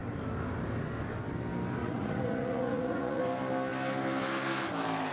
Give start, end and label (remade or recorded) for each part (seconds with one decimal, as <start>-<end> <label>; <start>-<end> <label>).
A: 0.0-1.8 recorded; 1.8-3.2 remade; 3.2-5.1 recorded